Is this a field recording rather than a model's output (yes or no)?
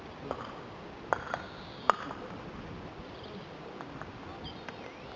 yes